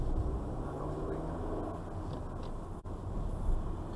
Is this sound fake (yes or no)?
no